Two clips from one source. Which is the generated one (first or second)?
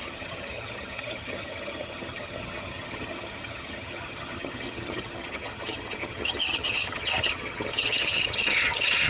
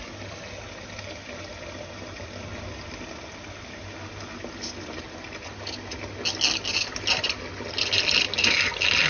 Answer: first